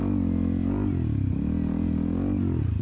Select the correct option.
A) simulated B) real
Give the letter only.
B